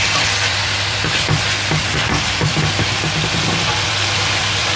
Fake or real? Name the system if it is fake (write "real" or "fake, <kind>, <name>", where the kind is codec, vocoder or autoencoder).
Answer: fake, vocoder, BigVGAN v2